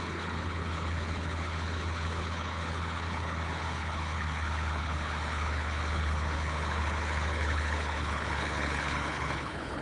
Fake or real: fake